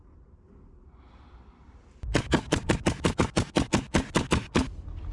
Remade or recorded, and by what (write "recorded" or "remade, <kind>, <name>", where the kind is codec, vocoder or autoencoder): recorded